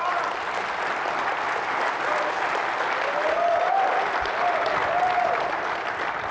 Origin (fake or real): real